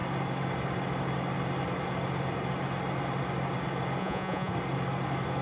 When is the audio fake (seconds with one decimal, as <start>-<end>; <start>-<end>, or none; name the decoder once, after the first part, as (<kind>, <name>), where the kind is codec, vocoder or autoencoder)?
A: 4.0-4.5 (vocoder, Vocos)